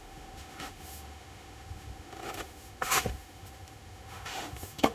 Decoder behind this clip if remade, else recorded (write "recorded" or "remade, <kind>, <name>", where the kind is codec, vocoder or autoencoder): remade, autoencoder, DAC-VAE